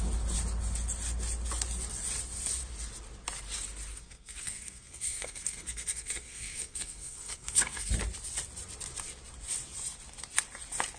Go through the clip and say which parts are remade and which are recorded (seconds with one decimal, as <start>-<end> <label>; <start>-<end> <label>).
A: 0.0-3.9 recorded; 3.9-7.9 remade; 7.9-11.0 recorded